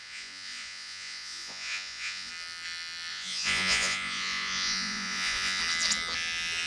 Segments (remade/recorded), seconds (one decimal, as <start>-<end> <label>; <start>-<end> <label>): 0.0-2.3 remade; 2.3-3.1 recorded; 3.1-5.6 remade; 5.6-6.7 recorded